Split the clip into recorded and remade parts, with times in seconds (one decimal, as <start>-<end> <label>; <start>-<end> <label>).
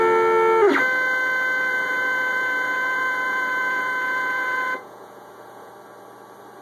0.0-1.7 recorded; 1.7-5.7 remade; 5.7-6.6 recorded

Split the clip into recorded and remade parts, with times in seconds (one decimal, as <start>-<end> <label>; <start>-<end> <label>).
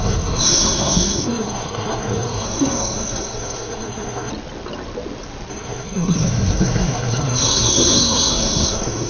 0.0-4.3 remade; 4.3-5.5 recorded; 5.5-9.1 remade